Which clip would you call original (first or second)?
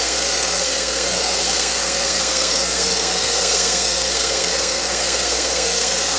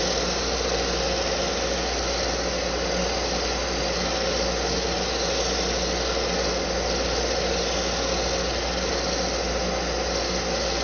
second